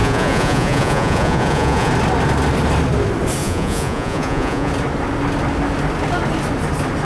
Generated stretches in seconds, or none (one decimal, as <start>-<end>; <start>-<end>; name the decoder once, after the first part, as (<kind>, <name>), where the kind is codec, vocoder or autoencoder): 0.0-1.9 (vocoder, Vocos); 3.4-4.7